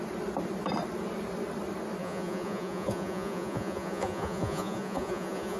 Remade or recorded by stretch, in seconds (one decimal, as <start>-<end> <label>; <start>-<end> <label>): 0.0-2.0 recorded; 2.0-5.6 remade